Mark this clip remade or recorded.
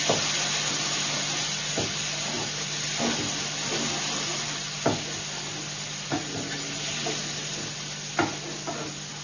recorded